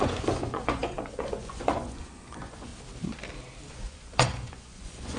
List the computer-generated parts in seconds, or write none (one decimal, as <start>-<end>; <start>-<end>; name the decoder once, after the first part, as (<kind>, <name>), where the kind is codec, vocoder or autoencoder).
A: 0.0-2.7 (vocoder, Vocos); 3.7-5.2